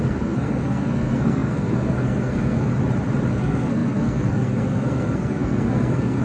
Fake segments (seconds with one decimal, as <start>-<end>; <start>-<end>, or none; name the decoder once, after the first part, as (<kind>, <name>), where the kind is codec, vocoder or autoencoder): 0.0-2.7 (codec, SNAC); 3.3-6.2